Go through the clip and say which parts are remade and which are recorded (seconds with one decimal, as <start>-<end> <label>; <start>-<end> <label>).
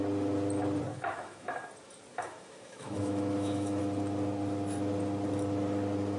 0.0-0.9 recorded; 0.9-1.7 remade; 1.7-2.1 recorded; 2.1-3.8 remade; 3.8-6.2 recorded